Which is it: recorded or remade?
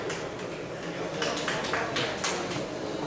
recorded